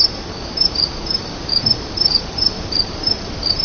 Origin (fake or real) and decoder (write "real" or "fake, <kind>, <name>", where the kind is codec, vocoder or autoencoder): fake, vocoder, BigVGAN v2